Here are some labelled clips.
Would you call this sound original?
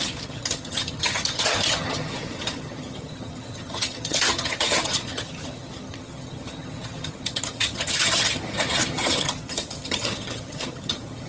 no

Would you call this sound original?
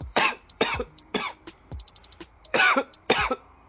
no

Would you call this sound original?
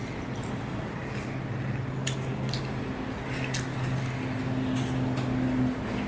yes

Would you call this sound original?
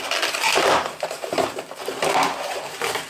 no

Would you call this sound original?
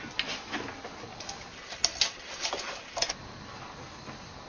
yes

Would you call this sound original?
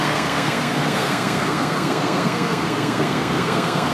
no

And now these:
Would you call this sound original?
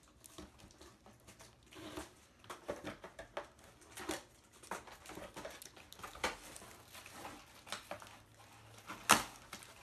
yes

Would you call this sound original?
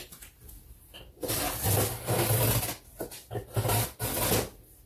yes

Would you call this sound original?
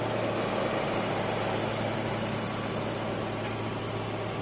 yes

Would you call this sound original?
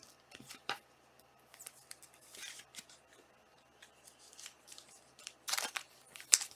no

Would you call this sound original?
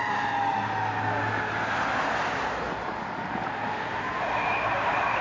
yes